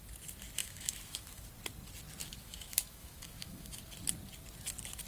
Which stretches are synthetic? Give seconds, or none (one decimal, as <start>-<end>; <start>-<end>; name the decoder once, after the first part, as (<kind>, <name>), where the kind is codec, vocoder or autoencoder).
0.6-1.5 (autoencoder, DAC-VAE); 2.2-3.8